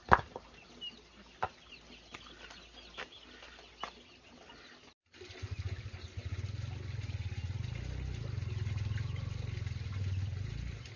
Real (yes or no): yes